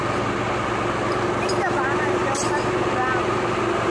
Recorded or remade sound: recorded